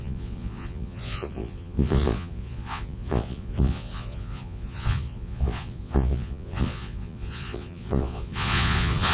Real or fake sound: fake